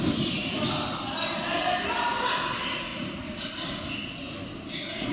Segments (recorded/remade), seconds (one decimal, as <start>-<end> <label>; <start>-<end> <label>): 0.0-5.1 recorded